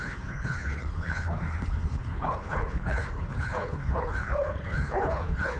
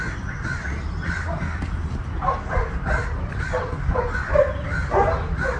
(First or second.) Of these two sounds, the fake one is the first